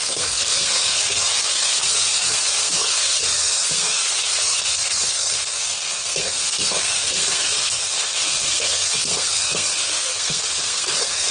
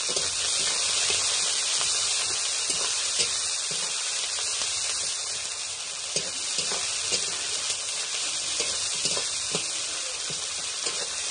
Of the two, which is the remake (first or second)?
first